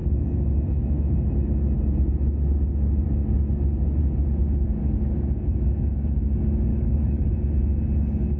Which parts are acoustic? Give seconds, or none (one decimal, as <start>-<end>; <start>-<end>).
0.0-6.7; 7.3-8.4